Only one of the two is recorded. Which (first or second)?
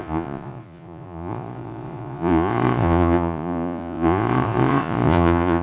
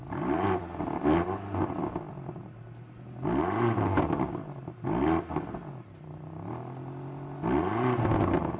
second